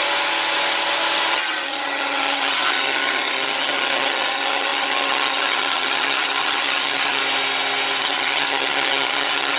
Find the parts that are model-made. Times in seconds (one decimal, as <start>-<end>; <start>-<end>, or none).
1.3-7.2; 8.0-9.6